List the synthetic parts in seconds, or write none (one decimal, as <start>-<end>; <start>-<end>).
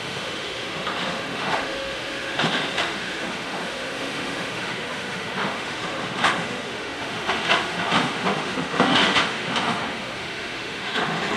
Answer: 0.0-11.4